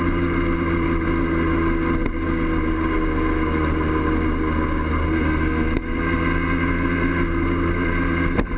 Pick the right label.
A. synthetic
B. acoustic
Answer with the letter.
B